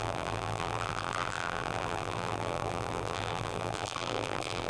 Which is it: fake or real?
fake